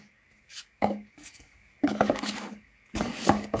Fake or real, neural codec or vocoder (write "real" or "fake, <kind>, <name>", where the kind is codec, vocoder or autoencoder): fake, codec, DAC